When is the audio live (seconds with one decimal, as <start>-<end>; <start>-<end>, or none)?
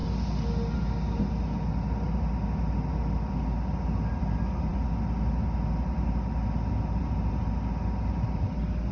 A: 0.0-8.9